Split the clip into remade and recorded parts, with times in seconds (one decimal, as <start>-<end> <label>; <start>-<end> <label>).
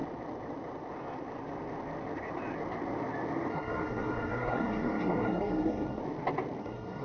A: 0.0-3.5 recorded; 3.5-6.0 remade; 6.0-6.6 recorded; 6.6-7.0 remade